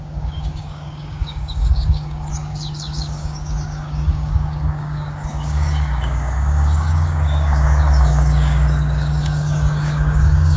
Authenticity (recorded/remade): remade